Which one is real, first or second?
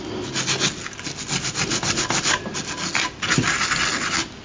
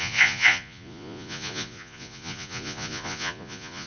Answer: first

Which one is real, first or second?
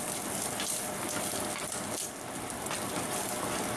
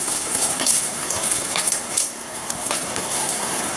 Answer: first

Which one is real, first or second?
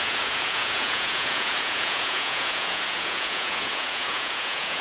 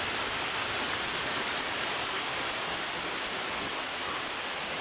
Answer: second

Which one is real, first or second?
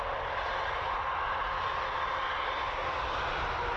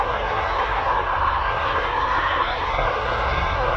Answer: first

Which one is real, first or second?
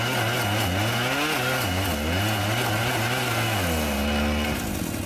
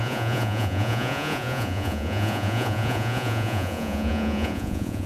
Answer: first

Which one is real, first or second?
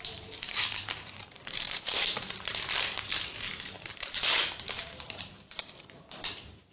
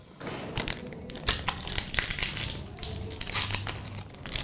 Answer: second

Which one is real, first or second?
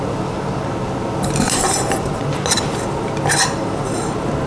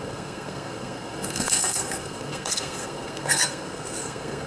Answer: first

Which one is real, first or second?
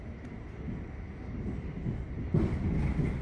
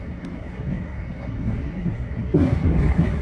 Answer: first